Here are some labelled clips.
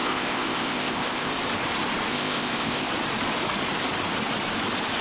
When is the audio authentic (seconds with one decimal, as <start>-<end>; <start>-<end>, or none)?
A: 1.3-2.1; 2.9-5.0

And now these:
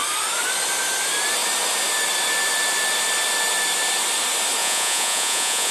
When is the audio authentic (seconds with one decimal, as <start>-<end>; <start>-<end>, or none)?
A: 0.0-4.6

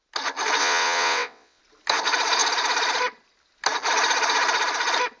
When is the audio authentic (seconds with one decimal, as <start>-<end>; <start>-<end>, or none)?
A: 0.0-0.6; 1.6-5.2

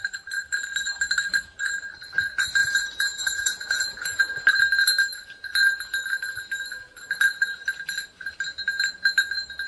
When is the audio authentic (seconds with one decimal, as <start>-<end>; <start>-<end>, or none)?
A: 0.0-2.6; 4.2-9.7

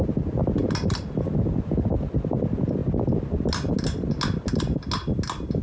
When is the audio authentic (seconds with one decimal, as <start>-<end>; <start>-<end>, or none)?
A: 0.0-5.6

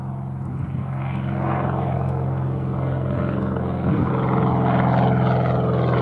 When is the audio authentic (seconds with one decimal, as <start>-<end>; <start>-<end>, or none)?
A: 0.0-0.5; 4.1-6.0